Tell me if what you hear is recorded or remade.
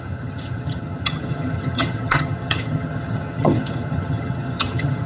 remade